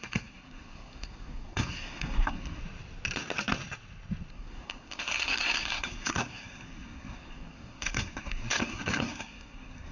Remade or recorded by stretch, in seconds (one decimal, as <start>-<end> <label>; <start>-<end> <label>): 0.0-2.6 remade; 2.6-4.3 recorded; 4.3-9.9 remade